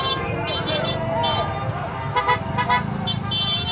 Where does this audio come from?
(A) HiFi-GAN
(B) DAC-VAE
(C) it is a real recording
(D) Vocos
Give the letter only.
C